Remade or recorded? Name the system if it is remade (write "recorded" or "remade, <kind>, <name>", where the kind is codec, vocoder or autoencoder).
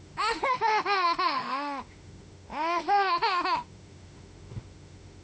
remade, autoencoder, DAC-VAE